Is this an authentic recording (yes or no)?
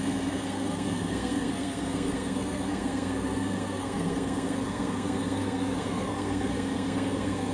no